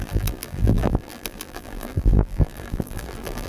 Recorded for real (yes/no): no